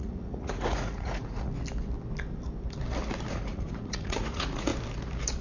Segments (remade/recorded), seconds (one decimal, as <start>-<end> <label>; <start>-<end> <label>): 0.0-1.5 remade; 1.5-3.3 recorded; 3.3-4.7 remade; 4.7-5.4 recorded